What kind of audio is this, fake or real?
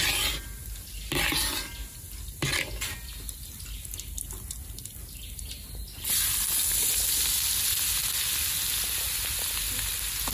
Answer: real